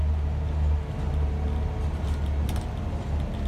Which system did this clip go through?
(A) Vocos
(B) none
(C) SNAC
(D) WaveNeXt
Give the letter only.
B